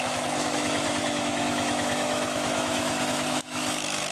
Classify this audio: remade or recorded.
remade